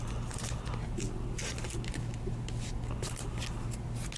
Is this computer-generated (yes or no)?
no